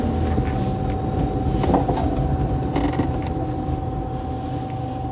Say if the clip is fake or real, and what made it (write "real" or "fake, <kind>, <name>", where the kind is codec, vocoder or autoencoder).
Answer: real